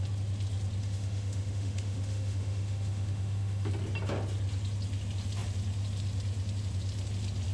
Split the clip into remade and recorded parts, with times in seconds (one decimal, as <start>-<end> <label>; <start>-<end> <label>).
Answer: 0.0-0.8 recorded; 0.8-3.7 remade; 3.7-7.5 recorded